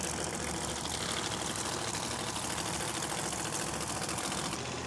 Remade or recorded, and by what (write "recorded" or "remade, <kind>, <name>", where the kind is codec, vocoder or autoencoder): recorded